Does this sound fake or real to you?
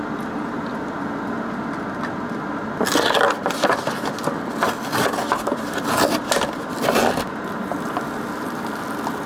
real